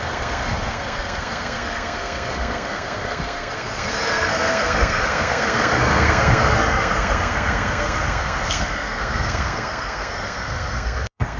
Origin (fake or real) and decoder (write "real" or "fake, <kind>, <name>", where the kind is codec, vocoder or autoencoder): fake, codec, SNAC